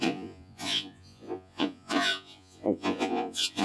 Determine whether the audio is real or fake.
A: fake